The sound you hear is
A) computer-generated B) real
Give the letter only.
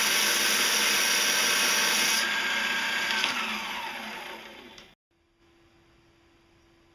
B